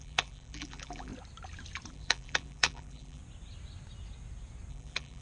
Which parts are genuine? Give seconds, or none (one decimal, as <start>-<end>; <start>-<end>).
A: 1.1-1.9; 3.2-4.7